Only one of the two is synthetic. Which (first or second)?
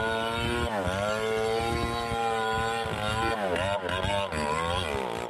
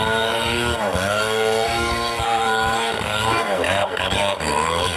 second